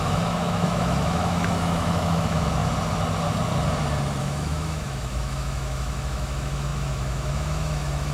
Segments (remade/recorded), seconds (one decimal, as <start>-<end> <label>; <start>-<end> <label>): 0.0-2.6 remade; 2.6-4.2 recorded; 4.2-8.1 remade